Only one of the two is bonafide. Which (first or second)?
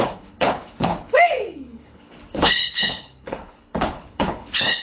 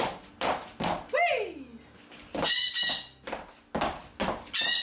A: second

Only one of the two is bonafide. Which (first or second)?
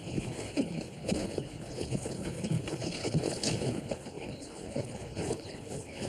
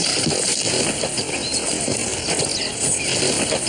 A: second